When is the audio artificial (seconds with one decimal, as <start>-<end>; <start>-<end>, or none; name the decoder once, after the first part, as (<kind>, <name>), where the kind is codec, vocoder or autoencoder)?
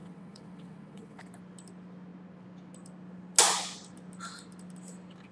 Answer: 0.0-1.2 (vocoder, WaveNeXt)